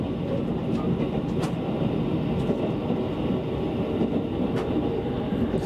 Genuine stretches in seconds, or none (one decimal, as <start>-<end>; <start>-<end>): 0.0-5.7